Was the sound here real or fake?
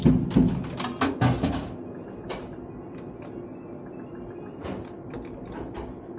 real